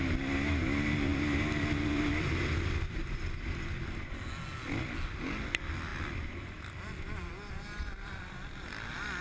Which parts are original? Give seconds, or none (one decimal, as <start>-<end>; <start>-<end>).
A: 0.0-9.2